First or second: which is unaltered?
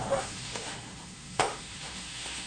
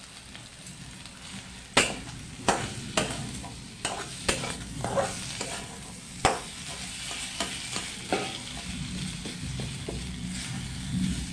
second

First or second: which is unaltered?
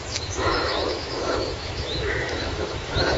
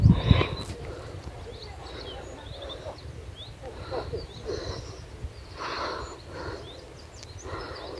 second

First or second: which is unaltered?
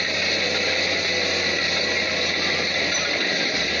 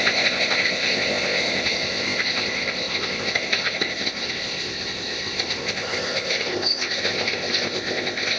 first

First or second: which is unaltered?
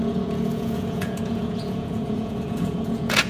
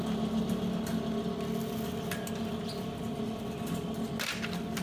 second